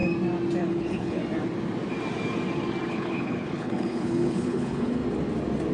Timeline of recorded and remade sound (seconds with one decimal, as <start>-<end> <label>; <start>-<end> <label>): 0.0-0.6 recorded; 0.6-1.2 remade; 1.2-2.9 recorded; 2.9-5.0 remade; 5.0-5.7 recorded